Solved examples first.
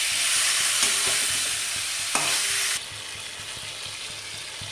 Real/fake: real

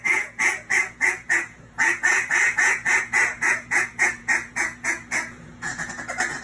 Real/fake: fake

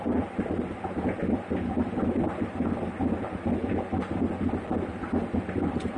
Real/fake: real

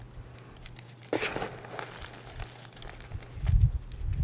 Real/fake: real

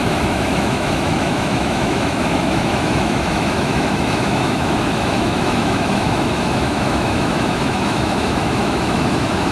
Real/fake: fake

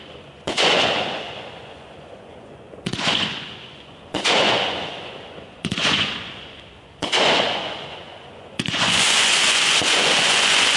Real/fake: fake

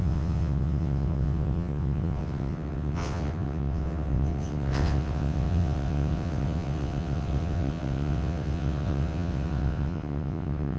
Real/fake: fake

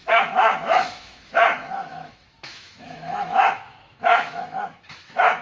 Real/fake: fake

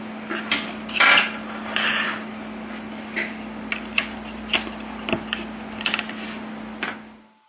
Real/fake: real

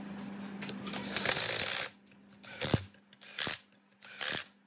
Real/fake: real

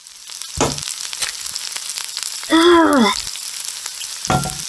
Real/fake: real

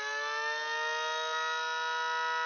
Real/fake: real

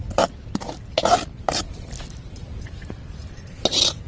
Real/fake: real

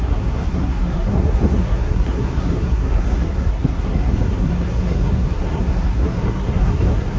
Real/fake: fake